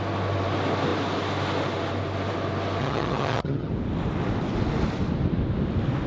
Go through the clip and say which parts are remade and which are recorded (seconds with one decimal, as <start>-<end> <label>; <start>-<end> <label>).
0.0-2.8 recorded; 2.8-3.7 remade; 3.7-6.1 recorded